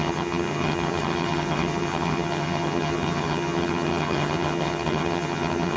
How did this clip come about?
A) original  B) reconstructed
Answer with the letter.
B